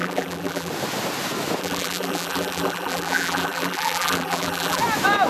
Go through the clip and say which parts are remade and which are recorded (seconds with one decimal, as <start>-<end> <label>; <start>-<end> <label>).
0.0-0.7 remade; 0.7-1.6 recorded; 1.6-4.8 remade; 4.8-5.3 recorded